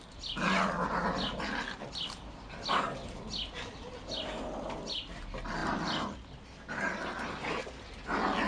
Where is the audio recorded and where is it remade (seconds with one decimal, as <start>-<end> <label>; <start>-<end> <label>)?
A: 0.0-5.6 recorded; 5.6-6.3 remade; 6.3-8.5 recorded